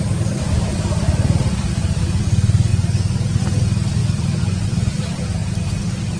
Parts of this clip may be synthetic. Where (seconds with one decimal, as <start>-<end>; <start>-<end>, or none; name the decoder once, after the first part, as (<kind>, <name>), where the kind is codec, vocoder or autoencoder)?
2.7-3.4 (vocoder, Vocos); 4.0-4.9